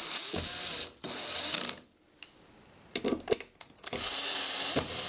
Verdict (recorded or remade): recorded